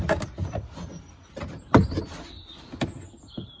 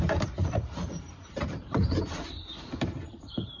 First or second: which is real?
first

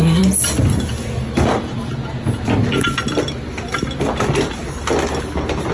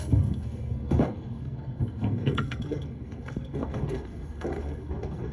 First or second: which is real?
first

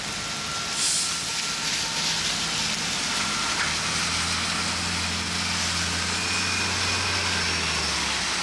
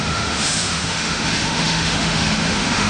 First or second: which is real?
first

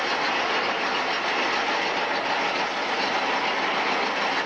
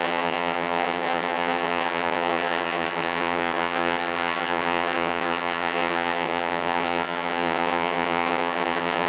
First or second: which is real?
first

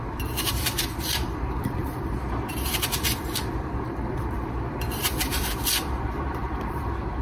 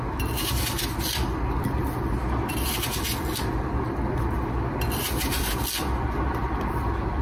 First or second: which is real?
second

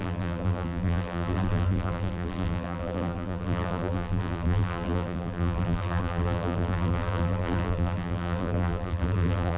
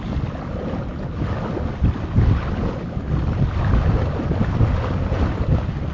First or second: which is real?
second